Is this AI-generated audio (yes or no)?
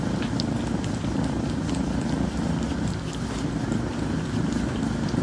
no